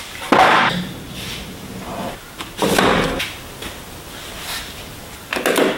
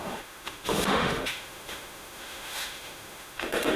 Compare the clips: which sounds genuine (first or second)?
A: first